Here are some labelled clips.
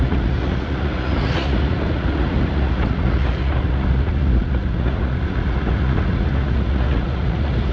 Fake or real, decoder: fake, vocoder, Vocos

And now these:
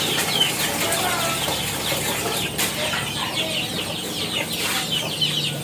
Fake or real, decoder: real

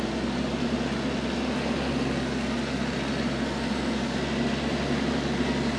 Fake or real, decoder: real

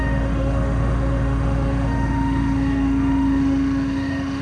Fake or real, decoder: fake, autoencoder, DAC-VAE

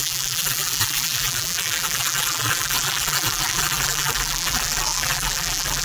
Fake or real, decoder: fake, vocoder, BigVGAN v2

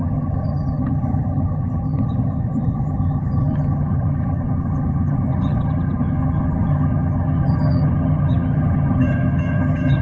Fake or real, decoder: fake, vocoder, HiFi-GAN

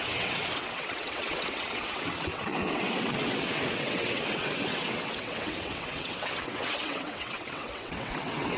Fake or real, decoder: fake, vocoder, WaveNeXt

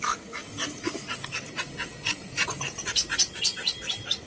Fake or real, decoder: real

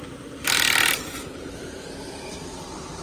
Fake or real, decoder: fake, vocoder, BigVGAN v2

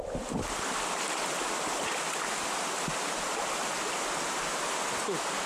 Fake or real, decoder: real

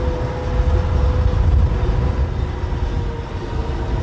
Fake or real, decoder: real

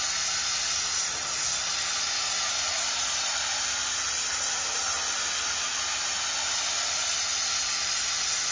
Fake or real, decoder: real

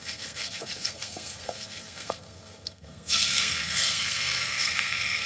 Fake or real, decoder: fake, codec, SNAC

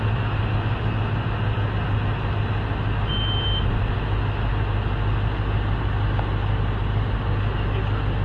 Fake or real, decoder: real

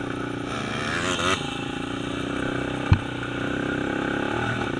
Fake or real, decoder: real